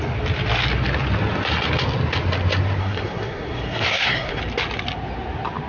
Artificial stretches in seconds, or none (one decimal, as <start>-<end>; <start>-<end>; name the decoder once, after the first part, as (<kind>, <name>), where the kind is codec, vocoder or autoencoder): 2.8-4.4 (codec, SNAC)